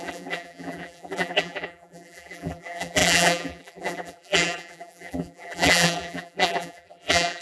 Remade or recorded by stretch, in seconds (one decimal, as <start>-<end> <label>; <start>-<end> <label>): 0.0-7.4 remade